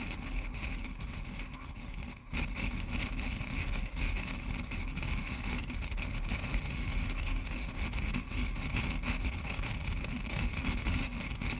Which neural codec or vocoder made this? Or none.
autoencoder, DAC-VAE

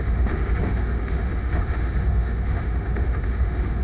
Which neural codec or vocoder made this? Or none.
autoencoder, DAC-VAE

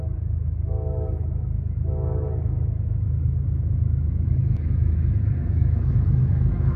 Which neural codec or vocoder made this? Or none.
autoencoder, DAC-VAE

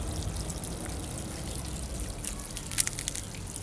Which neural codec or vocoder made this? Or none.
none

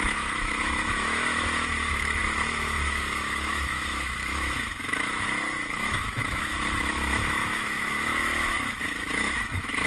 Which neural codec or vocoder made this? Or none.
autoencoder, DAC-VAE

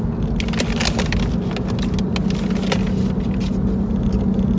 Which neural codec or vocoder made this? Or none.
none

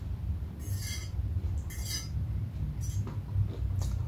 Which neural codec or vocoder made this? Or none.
none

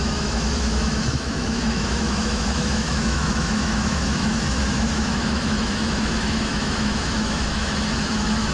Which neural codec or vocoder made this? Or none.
autoencoder, DAC-VAE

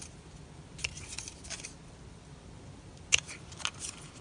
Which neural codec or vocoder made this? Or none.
none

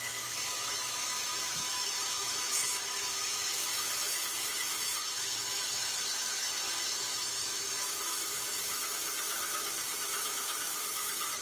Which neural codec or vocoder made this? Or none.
autoencoder, DAC-VAE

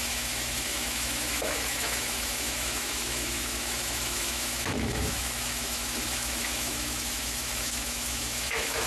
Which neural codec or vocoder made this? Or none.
autoencoder, DAC-VAE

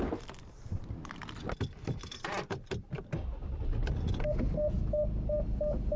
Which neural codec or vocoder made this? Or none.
none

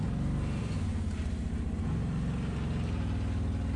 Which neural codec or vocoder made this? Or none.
none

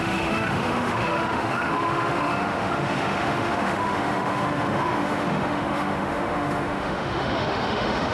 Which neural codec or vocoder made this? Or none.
autoencoder, DAC-VAE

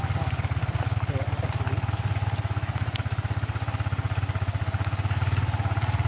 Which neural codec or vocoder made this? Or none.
none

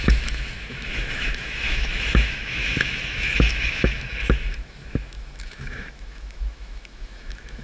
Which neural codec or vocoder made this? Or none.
autoencoder, DAC-VAE